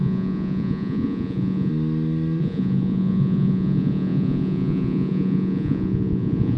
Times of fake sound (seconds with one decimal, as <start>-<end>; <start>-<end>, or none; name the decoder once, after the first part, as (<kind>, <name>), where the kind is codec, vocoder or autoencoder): 0.0-1.7 (vocoder, Vocos); 2.4-6.6